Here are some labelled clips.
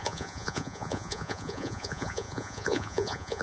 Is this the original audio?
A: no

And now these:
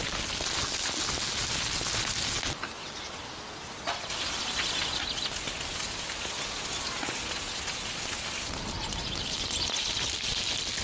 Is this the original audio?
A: yes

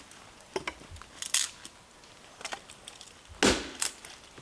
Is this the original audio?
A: yes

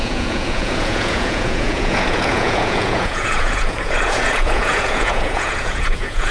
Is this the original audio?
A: no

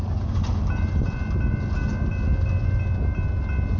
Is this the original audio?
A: yes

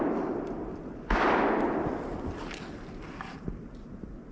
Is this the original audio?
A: yes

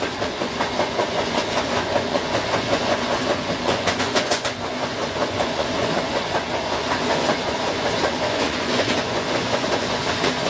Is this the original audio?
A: no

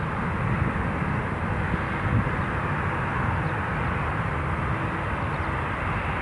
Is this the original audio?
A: yes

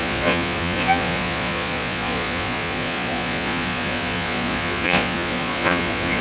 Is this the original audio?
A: no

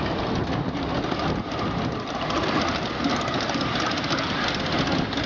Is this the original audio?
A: yes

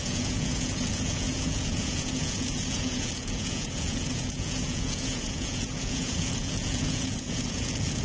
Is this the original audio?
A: no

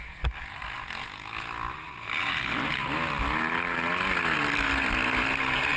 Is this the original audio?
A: yes